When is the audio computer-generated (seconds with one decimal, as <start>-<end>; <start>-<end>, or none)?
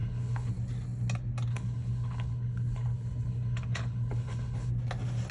0.0-0.5; 1.5-4.7